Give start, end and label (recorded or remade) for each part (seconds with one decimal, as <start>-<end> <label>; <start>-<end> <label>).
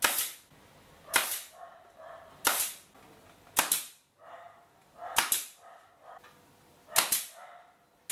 0.0-8.1 recorded